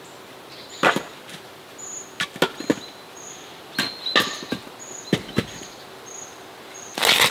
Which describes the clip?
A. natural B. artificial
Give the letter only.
A